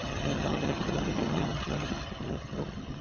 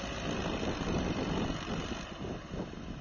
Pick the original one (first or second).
second